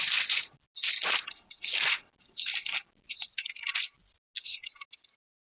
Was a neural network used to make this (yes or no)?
no